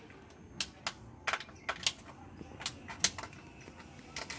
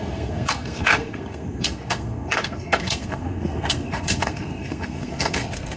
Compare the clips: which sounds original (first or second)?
first